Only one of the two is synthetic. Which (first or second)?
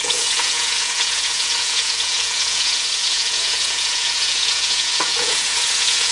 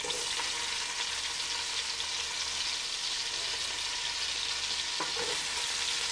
first